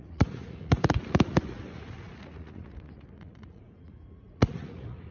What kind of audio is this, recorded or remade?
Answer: remade